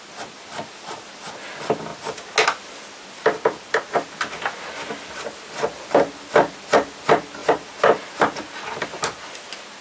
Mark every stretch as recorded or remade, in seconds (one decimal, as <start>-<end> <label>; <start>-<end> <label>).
0.0-9.8 recorded